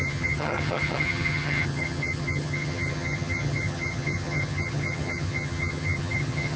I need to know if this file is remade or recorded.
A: remade